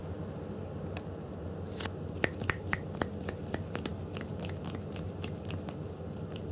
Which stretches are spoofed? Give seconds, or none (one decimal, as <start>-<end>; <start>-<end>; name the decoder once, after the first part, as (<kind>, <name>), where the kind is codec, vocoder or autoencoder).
none